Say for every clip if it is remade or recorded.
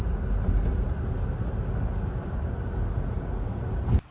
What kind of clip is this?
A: recorded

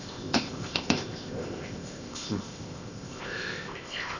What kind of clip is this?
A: remade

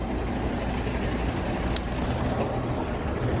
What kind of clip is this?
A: recorded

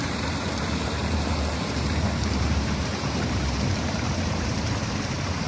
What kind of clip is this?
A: remade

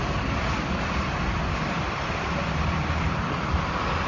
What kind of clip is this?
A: recorded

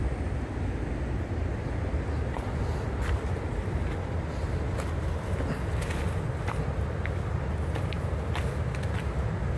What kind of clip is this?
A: recorded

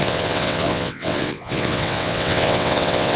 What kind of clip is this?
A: remade